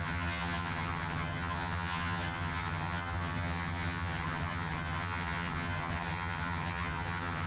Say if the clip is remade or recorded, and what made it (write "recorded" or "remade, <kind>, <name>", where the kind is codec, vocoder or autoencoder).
remade, vocoder, HiFi-GAN